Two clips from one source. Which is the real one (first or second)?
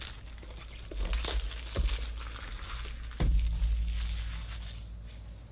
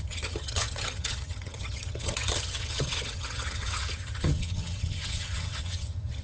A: first